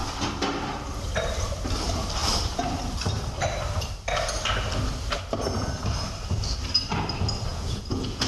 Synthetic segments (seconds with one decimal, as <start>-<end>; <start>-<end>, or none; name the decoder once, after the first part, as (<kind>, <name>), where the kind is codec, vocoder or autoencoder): 7.5-8.3 (vocoder, Vocos)